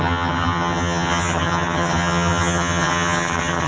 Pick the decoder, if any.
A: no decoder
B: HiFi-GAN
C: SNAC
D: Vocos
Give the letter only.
B